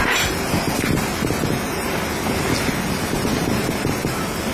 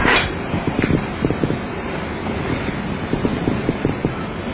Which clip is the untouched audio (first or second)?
first